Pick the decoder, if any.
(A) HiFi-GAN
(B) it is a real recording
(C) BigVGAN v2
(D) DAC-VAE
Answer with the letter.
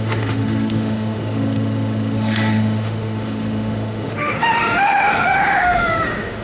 D